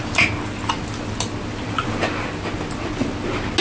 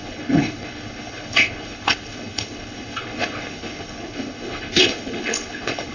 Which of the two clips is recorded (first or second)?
first